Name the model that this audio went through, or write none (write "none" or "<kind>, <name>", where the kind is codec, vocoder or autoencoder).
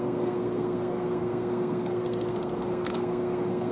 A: codec, SNAC